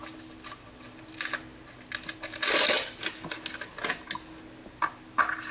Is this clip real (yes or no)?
yes